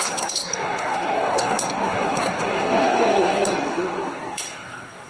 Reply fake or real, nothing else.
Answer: fake